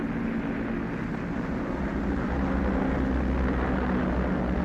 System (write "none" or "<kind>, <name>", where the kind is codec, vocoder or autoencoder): none